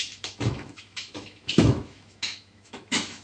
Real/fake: fake